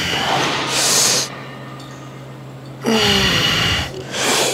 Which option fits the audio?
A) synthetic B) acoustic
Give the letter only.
A